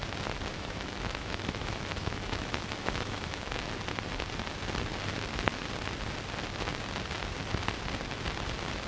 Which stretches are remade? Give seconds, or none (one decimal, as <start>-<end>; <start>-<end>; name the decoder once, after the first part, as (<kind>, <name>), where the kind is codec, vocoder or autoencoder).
0.5-3.6 (autoencoder, DAC-VAE)